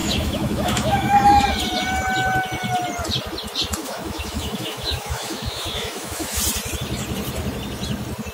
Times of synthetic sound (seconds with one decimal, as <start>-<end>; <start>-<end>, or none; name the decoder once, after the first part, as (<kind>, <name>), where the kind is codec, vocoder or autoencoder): 0.0-1.4 (autoencoder, DAC-VAE); 3.8-6.4